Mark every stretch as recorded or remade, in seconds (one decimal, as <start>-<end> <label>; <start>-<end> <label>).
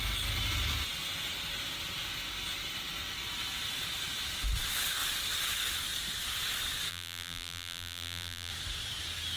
0.0-6.9 recorded; 6.9-8.5 remade; 8.5-9.4 recorded